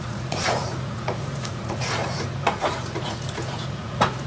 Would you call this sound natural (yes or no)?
no